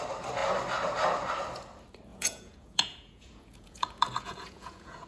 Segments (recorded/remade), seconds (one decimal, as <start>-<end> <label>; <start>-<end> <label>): 0.0-2.1 recorded; 2.1-5.1 remade